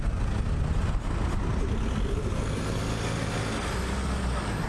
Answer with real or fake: real